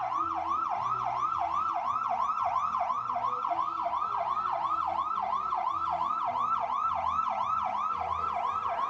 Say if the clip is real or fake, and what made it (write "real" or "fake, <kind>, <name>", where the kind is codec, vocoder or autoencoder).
real